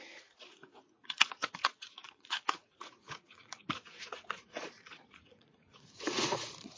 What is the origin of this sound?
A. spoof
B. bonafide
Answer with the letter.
A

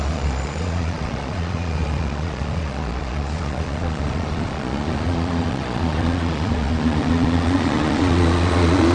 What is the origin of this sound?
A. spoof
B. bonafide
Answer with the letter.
A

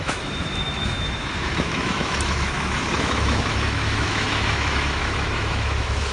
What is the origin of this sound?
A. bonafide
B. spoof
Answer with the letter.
B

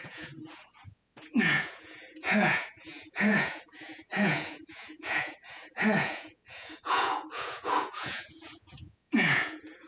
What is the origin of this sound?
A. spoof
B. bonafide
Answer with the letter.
A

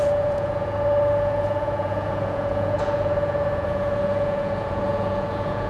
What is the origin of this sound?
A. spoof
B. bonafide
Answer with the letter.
A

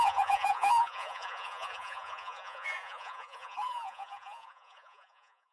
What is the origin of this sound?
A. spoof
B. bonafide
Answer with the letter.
A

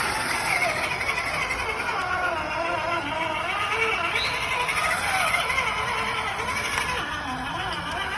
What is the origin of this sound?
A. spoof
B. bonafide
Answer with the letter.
B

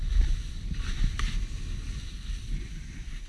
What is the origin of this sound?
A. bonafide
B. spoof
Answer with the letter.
A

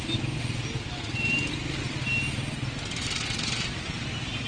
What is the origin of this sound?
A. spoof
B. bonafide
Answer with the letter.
B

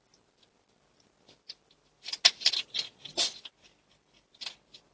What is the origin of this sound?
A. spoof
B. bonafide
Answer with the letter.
B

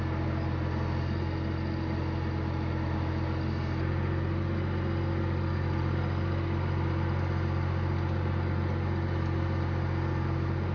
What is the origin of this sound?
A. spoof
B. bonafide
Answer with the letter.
B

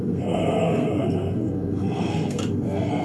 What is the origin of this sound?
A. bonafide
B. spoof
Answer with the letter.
B